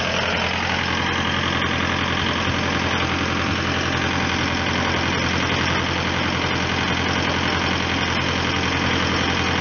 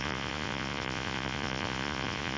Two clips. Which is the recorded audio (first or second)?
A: first